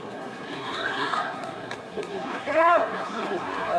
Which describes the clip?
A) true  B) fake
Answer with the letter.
B